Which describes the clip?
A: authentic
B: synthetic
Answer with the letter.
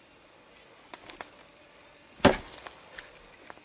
A